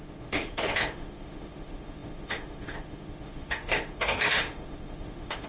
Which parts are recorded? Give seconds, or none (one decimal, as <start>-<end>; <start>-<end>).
none